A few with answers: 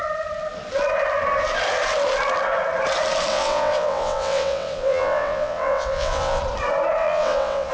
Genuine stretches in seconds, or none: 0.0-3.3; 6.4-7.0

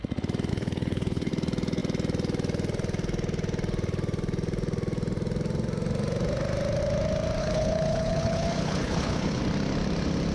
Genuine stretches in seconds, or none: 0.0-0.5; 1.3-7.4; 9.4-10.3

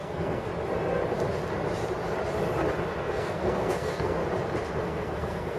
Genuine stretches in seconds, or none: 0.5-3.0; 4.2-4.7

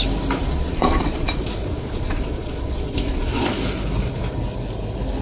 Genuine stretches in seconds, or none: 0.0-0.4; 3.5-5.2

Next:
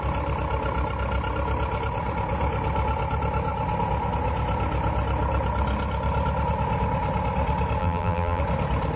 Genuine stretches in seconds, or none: 0.0-7.8; 8.4-9.0

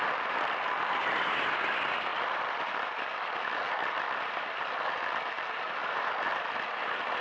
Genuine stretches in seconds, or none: 0.0-2.1; 4.9-7.2